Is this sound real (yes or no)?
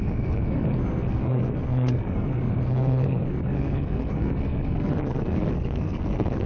no